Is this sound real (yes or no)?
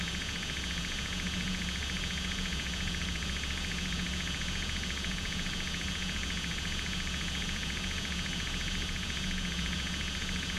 no